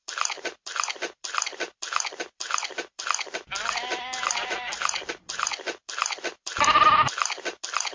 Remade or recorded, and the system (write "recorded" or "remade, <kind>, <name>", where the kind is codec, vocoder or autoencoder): remade, vocoder, BigVGAN v2